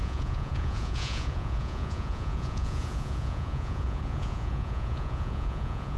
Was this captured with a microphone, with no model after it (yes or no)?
no